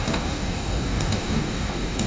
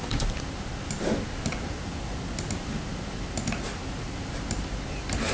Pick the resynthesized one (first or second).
first